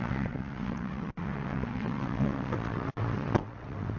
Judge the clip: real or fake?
fake